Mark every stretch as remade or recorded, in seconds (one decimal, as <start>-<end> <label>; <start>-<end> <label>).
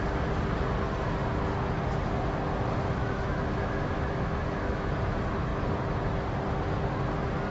0.0-3.0 recorded; 3.0-4.9 remade; 4.9-7.5 recorded